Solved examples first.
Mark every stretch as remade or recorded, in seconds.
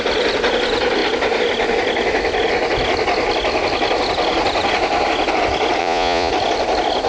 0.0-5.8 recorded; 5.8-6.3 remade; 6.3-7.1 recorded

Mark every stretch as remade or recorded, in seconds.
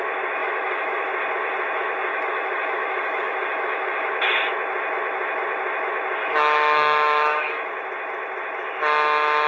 0.0-0.4 recorded; 0.4-1.0 remade; 1.0-2.1 recorded; 2.1-4.1 remade; 4.1-6.2 recorded; 6.2-7.7 remade; 7.7-9.5 recorded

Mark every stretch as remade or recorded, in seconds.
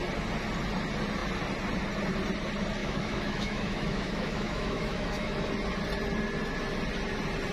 0.0-2.8 recorded; 2.8-5.5 remade; 5.5-7.5 recorded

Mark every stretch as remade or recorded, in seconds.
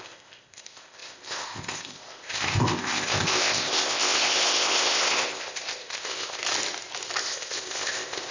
0.0-6.4 remade; 6.4-7.2 recorded; 7.2-8.3 remade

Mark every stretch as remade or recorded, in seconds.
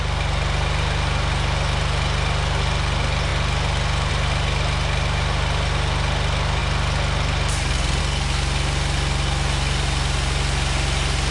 0.0-11.3 recorded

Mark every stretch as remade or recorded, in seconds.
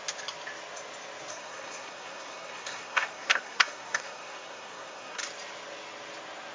0.0-1.3 recorded; 1.3-5.2 remade; 5.2-6.5 recorded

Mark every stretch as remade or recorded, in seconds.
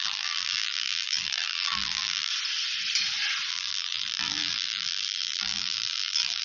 0.0-2.3 remade; 2.3-3.5 recorded; 3.5-6.4 remade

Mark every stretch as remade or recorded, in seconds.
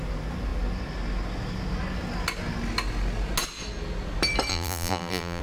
0.0-4.5 recorded; 4.5-5.4 remade